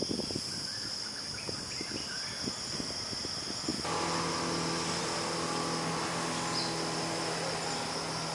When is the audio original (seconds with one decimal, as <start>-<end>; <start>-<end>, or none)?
0.0-8.3